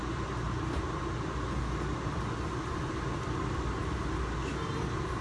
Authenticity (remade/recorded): recorded